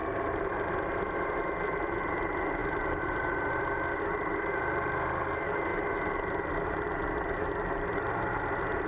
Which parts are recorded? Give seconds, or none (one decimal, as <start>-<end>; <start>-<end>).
0.5-2.6; 3.5-8.9